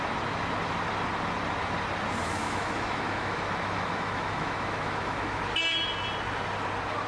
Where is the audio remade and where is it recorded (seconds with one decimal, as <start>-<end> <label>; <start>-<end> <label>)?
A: 0.0-2.2 recorded; 2.2-5.4 remade; 5.4-7.1 recorded